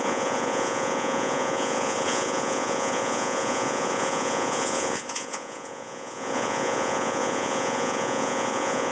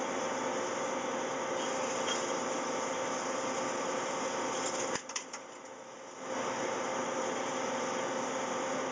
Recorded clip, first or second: second